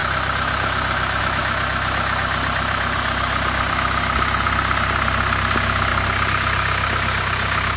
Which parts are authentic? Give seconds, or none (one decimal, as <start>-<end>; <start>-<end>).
0.0-7.8